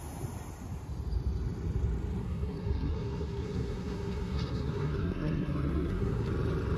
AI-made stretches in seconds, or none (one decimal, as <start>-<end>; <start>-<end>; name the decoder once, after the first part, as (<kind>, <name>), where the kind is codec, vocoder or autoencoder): 2.2-6.3 (codec, SNAC)